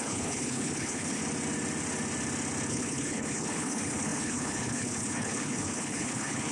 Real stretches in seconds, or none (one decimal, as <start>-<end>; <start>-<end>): 1.2-2.7